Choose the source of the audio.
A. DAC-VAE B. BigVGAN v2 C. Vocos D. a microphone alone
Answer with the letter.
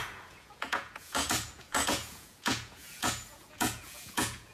C